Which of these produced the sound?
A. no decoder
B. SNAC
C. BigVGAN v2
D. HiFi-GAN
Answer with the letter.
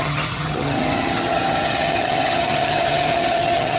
D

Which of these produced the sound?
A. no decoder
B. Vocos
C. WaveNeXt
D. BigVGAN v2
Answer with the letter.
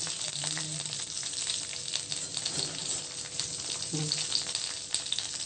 A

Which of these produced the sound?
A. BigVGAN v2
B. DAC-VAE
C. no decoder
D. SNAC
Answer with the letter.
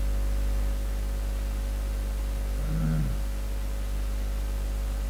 C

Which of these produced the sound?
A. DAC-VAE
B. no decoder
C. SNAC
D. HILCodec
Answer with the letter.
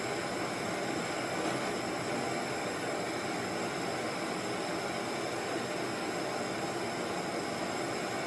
B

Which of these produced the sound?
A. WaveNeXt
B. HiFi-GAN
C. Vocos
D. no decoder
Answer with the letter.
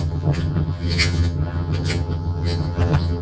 B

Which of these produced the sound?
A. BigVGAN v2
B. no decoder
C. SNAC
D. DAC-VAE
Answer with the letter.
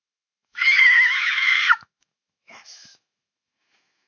D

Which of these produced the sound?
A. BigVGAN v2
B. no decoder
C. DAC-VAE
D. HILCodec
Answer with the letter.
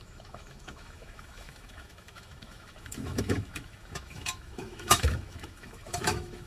C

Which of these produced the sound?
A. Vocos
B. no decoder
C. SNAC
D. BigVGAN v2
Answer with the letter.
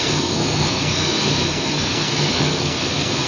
C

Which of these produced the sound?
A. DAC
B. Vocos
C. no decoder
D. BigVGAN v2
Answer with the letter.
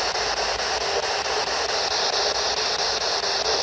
C